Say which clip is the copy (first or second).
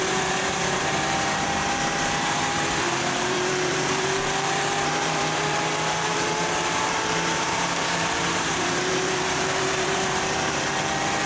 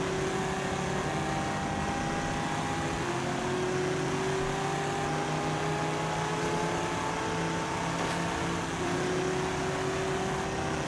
first